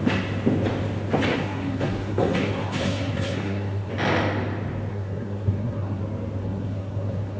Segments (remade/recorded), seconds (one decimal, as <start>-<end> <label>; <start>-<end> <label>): 0.0-1.3 recorded; 1.3-3.9 remade; 3.9-4.9 recorded; 4.9-6.0 remade; 6.0-6.4 recorded; 6.4-7.4 remade